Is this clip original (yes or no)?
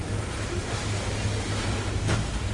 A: yes